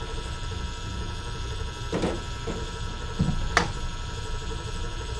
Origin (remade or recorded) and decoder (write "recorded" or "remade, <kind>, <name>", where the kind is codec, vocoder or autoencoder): recorded